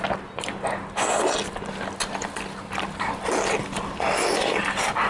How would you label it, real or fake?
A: real